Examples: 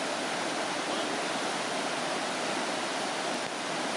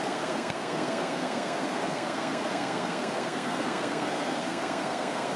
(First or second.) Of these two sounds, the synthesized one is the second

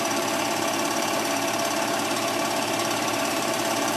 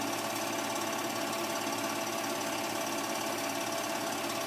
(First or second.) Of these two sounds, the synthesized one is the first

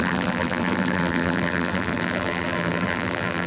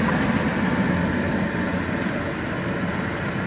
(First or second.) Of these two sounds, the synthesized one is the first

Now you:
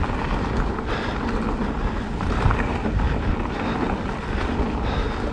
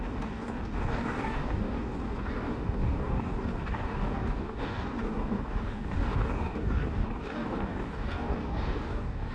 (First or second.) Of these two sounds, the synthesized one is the second